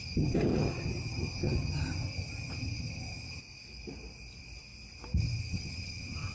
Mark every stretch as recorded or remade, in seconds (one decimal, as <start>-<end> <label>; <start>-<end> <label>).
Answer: 0.0-3.4 remade; 3.4-5.2 recorded; 5.2-6.3 remade